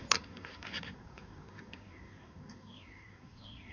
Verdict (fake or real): fake